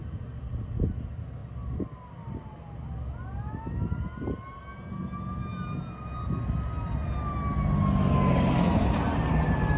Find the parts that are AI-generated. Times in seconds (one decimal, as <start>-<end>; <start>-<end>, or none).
none